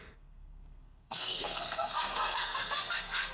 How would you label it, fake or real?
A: fake